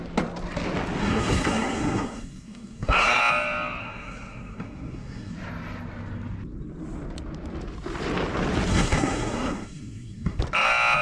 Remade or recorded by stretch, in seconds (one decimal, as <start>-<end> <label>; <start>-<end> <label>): 0.0-1.0 recorded; 1.0-3.2 remade; 3.2-3.8 recorded; 3.8-5.3 remade; 5.3-8.7 recorded; 8.7-10.4 remade; 10.4-11.0 recorded